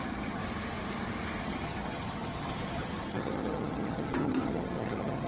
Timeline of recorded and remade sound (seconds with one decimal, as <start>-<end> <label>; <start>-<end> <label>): 0.0-0.4 remade; 0.4-1.4 recorded; 1.4-5.3 remade